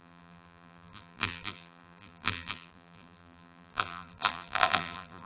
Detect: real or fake fake